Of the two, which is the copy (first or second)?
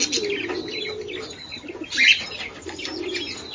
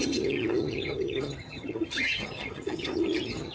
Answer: second